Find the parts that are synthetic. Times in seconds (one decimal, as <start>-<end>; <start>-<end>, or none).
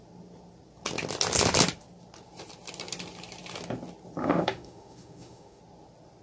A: 4.2-5.6